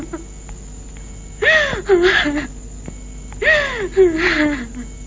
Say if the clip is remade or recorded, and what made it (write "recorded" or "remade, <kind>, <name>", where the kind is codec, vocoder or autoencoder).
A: recorded